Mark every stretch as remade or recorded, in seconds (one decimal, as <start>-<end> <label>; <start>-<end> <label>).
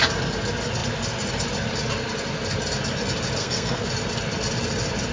0.0-3.4 recorded; 3.4-3.9 remade; 3.9-5.1 recorded